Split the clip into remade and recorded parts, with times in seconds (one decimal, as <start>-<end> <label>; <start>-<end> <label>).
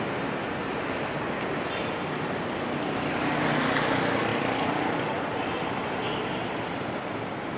0.0-7.6 recorded